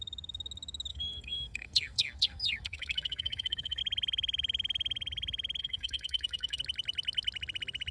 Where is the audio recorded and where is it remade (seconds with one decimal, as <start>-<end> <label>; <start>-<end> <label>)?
0.0-0.9 recorded; 0.9-3.8 remade; 3.8-5.6 recorded; 5.6-6.6 remade; 6.6-7.9 recorded